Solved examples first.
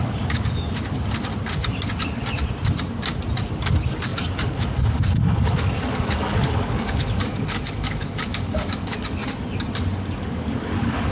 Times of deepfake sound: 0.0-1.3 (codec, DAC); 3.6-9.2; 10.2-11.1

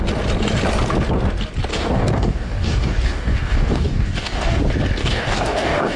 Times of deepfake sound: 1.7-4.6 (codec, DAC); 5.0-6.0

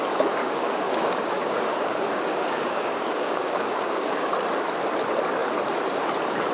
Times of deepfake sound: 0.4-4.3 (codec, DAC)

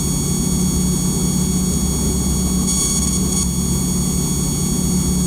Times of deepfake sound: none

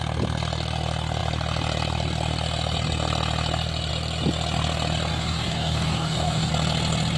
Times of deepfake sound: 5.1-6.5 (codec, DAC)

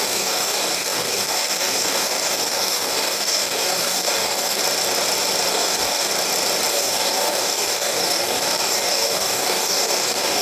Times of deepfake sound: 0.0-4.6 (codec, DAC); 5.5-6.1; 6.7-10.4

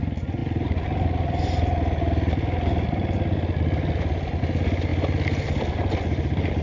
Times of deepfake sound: none